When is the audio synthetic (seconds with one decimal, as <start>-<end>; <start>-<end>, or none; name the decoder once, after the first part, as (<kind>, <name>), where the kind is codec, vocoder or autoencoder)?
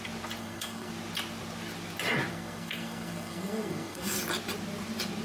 0.4-0.9 (codec, SNAC); 2.3-4.2